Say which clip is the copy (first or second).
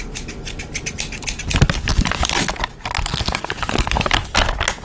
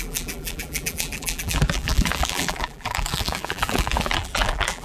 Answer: second